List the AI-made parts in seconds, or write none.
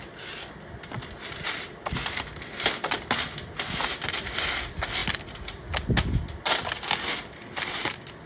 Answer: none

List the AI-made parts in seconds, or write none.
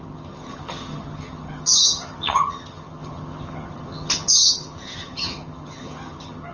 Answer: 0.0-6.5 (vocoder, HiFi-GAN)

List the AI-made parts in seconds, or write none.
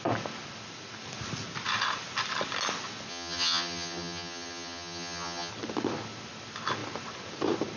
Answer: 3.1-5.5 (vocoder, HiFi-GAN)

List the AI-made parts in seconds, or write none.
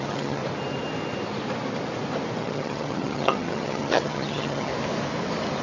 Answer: 0.0-0.4 (vocoder, HiFi-GAN); 2.4-4.7